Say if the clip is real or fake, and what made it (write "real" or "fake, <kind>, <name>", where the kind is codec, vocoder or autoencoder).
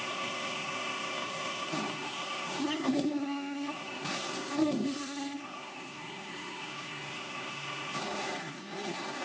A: fake, codec, SNAC